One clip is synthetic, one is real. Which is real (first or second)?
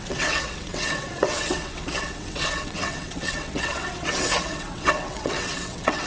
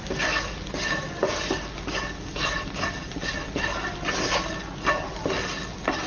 second